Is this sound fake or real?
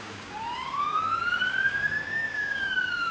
fake